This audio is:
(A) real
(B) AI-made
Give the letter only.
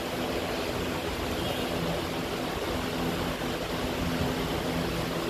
A